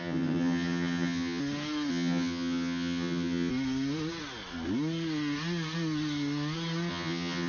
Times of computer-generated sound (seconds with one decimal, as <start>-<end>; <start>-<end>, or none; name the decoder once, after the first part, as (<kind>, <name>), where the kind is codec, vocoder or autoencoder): 0.0-1.4 (vocoder, HiFi-GAN); 1.9-3.5; 6.9-7.5